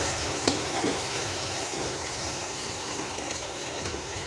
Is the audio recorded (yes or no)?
no